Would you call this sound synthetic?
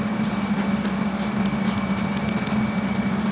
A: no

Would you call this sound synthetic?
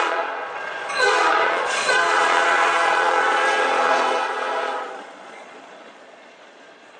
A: yes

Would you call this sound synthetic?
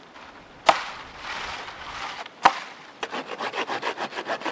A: no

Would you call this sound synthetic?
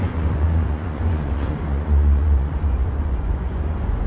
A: yes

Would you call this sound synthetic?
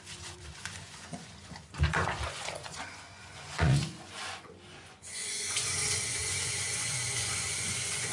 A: yes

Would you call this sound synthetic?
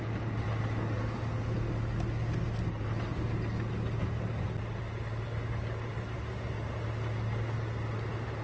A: no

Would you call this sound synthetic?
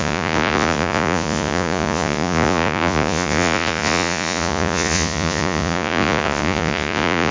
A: yes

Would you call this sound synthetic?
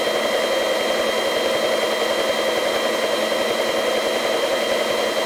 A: no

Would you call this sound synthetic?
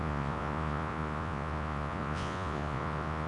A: yes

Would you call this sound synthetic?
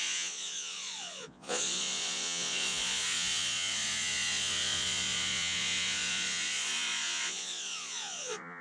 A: yes